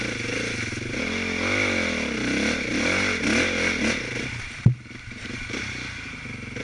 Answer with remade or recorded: recorded